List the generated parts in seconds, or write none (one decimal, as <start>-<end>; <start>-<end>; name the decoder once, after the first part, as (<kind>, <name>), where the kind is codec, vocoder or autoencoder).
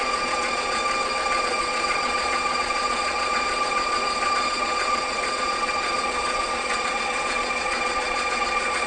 0.0-0.8 (vocoder, Vocos); 1.4-8.9